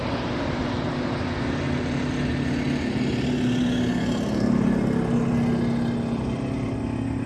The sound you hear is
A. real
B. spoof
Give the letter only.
A